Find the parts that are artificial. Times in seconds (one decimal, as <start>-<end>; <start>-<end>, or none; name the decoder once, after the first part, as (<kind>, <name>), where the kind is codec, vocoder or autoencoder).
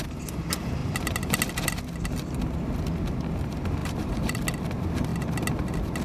3.8-4.4 (vocoder, BigVGAN v2)